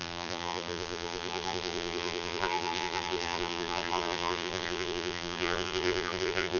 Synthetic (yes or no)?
yes